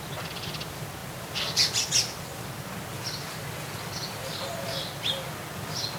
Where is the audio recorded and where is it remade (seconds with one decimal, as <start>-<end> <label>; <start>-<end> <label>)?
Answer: 0.0-6.0 recorded

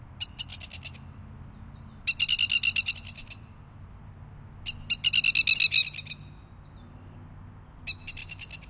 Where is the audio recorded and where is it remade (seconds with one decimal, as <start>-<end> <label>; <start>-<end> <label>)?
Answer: 0.0-8.7 recorded

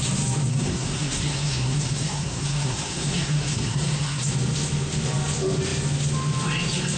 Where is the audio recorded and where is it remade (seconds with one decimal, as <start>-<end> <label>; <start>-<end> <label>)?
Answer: 0.0-0.5 recorded; 0.5-4.3 remade; 4.3-7.0 recorded

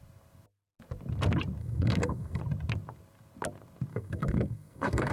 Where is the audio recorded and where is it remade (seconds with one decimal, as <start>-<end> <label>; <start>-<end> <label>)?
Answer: 0.0-1.6 recorded; 1.6-2.4 remade; 2.4-3.9 recorded; 3.9-5.1 remade